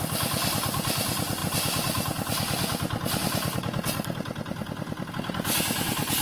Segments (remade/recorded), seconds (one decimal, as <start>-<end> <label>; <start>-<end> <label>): 0.0-6.2 recorded